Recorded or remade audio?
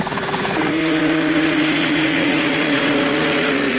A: remade